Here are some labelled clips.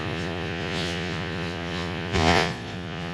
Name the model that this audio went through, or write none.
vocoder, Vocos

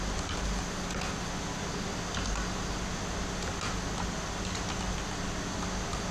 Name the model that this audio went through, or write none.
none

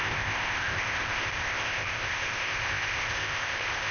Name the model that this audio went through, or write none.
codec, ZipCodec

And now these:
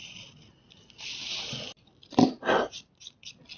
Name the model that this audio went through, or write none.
none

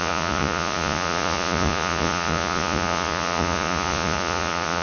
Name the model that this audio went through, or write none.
vocoder, Vocos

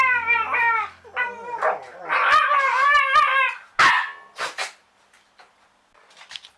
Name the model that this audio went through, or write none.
none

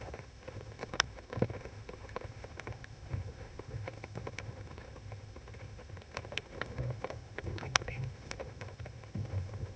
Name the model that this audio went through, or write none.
autoencoder, DAC-VAE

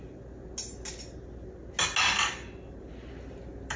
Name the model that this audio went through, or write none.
none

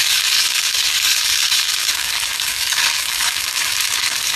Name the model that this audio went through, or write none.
codec, DAC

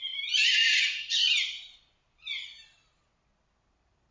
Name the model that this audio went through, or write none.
vocoder, BigVGAN v2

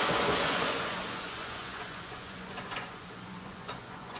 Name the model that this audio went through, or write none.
vocoder, Vocos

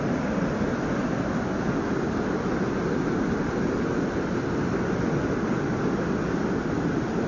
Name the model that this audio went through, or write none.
none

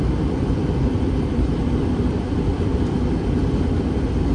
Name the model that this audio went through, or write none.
vocoder, BigVGAN v2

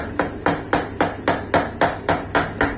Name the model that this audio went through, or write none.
none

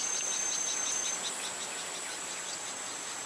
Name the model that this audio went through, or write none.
none